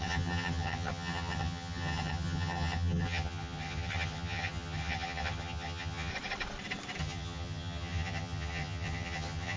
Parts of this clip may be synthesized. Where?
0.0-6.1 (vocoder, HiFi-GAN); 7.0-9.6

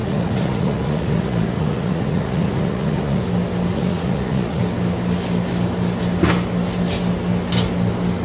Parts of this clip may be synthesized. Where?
0.0-3.2 (vocoder, Vocos); 3.7-4.6